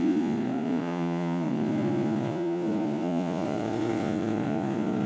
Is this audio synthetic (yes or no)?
yes